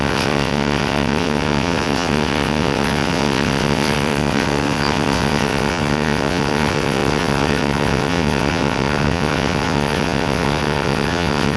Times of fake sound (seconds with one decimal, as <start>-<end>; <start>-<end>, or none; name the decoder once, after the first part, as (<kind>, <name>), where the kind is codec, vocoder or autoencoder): 0.0-11.6 (vocoder, WaveNeXt)